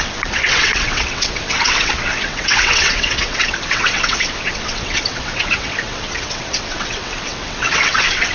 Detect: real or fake fake